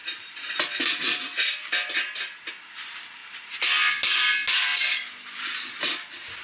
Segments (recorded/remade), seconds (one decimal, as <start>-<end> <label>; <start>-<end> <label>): 0.0-6.4 recorded